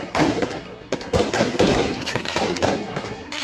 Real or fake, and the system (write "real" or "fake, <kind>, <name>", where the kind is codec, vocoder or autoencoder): fake, codec, SNAC